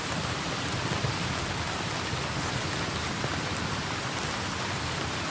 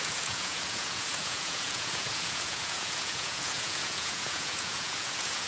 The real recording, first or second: first